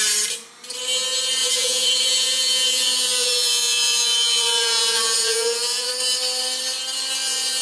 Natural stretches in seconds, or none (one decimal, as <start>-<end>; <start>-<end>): 0.0-1.4; 5.9-7.6